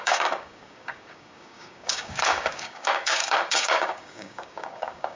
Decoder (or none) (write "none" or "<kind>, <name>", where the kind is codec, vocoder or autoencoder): codec, DAC